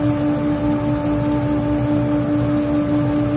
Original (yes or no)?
yes